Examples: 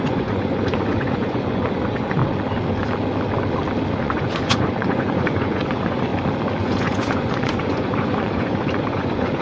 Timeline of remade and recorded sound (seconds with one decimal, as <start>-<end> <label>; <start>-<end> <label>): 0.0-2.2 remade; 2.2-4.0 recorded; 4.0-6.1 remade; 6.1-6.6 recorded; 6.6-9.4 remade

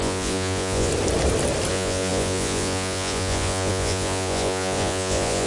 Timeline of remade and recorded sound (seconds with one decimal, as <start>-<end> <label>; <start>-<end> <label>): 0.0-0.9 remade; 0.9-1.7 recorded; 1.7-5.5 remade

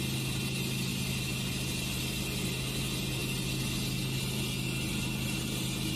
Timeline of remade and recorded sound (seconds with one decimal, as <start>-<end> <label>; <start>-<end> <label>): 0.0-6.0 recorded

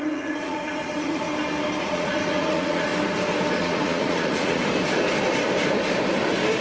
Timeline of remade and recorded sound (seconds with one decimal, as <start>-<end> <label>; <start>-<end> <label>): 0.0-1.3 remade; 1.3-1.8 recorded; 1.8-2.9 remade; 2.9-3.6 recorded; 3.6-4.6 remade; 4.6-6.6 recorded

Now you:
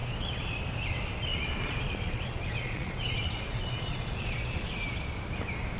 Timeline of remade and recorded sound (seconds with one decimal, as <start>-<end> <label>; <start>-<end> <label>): 0.0-0.6 remade; 0.6-1.3 recorded; 1.3-4.8 remade; 4.8-5.8 recorded

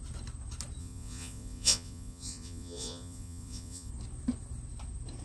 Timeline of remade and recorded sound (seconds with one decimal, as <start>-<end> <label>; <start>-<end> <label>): 0.0-0.8 recorded; 0.8-3.9 remade; 3.9-5.2 recorded

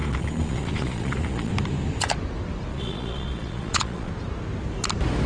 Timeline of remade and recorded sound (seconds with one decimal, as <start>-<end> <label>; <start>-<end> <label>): 0.0-1.5 remade; 1.5-2.7 recorded; 2.7-4.1 remade; 4.1-5.3 recorded